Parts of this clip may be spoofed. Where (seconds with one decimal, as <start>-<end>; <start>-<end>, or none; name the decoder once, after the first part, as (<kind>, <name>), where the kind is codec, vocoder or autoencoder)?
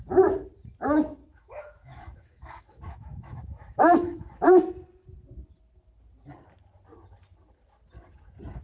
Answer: 1.2-4.7 (autoencoder, DAC-VAE)